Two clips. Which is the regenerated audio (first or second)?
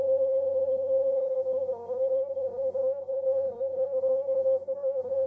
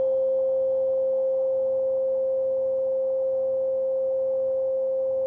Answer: first